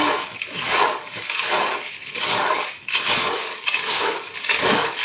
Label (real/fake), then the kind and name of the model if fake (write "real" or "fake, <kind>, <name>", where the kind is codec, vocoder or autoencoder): fake, codec, DAC